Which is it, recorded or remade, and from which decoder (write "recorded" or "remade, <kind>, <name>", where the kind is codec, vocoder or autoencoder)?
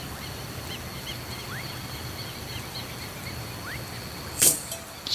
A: remade, vocoder, BigVGAN v2